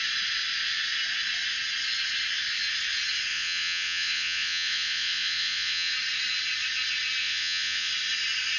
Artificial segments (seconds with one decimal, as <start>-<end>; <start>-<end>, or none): 3.3-5.9; 7.2-7.9